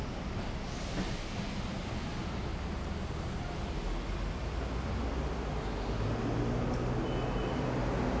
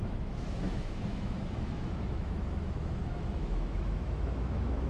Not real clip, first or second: second